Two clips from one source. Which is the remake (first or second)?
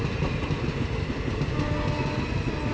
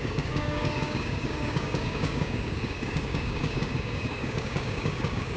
second